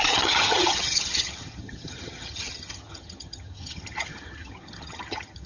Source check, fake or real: fake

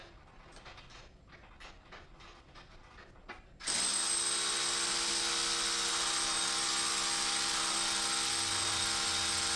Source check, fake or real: real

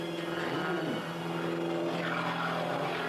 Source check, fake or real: real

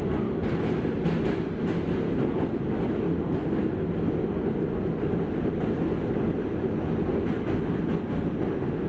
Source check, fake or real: real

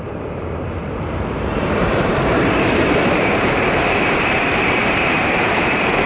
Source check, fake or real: fake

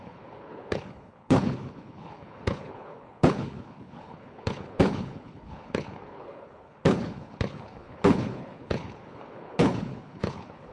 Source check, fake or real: fake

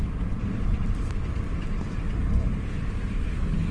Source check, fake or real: fake